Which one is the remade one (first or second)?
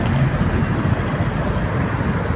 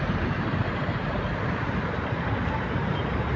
second